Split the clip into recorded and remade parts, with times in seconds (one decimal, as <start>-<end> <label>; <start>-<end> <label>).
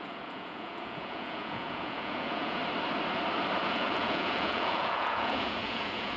0.0-2.6 remade; 2.6-3.6 recorded; 3.6-6.2 remade